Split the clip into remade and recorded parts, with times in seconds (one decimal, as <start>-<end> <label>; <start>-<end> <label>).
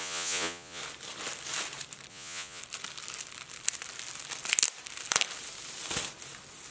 0.0-0.8 remade; 0.8-2.1 recorded; 2.1-2.6 remade; 2.6-6.7 recorded